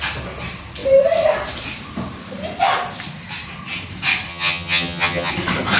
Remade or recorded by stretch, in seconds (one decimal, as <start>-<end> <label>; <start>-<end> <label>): 0.0-4.3 recorded; 4.3-5.3 remade; 5.3-5.8 recorded